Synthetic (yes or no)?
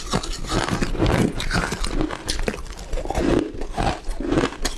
no